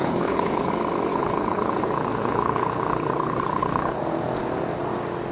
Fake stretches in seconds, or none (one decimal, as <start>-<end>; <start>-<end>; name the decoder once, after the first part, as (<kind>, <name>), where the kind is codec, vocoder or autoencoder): 0.0-0.7 (codec, HILCodec); 1.1-4.0

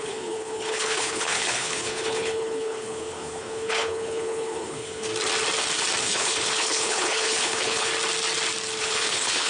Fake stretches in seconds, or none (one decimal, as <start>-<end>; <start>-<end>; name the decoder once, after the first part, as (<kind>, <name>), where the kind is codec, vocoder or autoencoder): 0.0-5.1 (codec, HILCodec); 6.0-7.9; 8.8-9.5

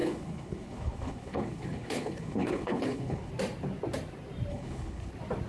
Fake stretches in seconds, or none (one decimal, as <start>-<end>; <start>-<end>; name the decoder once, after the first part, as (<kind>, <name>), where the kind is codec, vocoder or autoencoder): 0.0-3.3 (codec, HILCodec); 4.5-5.1

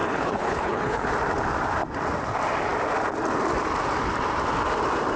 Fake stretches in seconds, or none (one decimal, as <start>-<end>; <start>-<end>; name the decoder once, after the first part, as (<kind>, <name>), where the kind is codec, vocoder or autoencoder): 0.0-1.1 (codec, HILCodec)

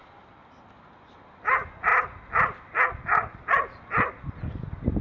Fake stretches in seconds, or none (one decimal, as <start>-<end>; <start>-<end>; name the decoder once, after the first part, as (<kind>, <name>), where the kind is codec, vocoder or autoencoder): none